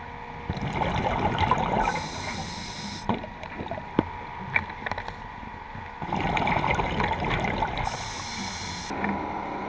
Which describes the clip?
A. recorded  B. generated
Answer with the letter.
A